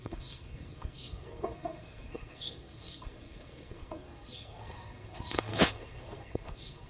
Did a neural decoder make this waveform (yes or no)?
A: yes